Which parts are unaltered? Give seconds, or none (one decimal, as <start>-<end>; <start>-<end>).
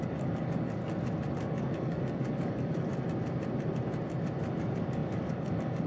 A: 0.8-1.3; 2.9-4.6